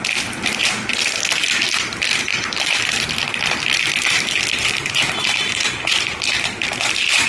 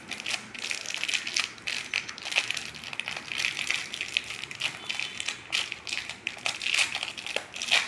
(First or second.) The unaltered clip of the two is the second